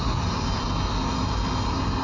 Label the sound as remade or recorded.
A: recorded